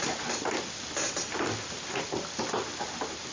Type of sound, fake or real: real